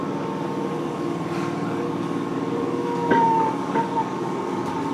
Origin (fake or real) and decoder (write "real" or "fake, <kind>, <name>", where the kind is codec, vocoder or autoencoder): fake, codec, DAC